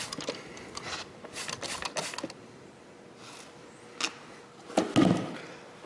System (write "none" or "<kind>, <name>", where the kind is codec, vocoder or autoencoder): none